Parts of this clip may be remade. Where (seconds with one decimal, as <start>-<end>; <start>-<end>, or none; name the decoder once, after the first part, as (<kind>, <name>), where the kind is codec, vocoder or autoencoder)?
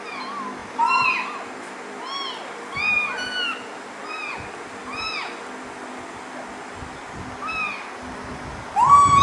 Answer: none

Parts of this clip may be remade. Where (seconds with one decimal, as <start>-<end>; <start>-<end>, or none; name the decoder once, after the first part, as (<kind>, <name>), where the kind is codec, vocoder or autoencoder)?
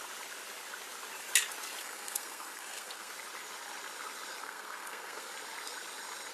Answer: 1.8-3.1 (codec, SNAC); 4.4-5.3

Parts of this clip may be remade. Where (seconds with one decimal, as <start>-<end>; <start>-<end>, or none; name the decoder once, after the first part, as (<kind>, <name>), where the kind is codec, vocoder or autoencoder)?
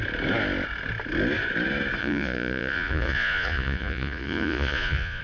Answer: 2.0-5.2 (vocoder, Vocos)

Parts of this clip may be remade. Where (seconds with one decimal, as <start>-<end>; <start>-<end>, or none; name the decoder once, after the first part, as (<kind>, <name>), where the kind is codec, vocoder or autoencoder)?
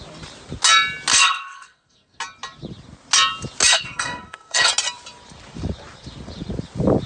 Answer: 1.1-2.2 (codec, SNAC); 3.7-4.7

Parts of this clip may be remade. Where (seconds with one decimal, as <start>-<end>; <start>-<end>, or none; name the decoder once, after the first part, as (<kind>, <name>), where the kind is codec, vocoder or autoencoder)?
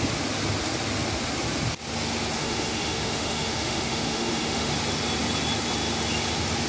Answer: 2.4-4.7 (autoencoder, DAC-VAE)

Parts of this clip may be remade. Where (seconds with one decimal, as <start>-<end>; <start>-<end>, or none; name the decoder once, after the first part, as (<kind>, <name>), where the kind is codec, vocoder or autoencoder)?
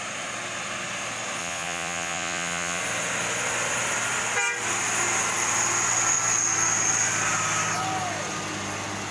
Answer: 1.4-2.8 (vocoder, Vocos)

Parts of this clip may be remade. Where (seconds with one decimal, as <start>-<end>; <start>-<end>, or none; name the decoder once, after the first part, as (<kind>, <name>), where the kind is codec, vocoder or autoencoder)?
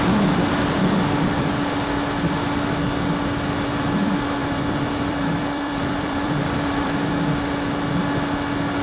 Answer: 4.4-7.1 (vocoder, BigVGAN v2)